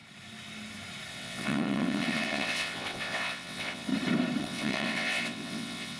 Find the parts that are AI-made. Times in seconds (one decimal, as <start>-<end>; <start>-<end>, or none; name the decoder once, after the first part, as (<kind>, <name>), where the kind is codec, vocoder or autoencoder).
1.1-3.9 (vocoder, WaveNeXt); 4.4-6.0